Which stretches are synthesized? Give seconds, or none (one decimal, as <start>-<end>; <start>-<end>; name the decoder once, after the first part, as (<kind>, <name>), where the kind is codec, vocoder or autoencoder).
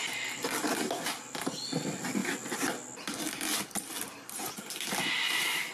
none